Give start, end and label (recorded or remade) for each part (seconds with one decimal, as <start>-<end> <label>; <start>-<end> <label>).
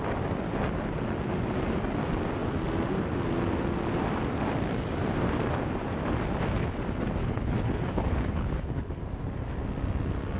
0.0-7.2 recorded; 7.2-9.0 remade; 9.0-10.4 recorded